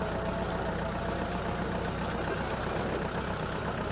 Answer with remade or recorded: recorded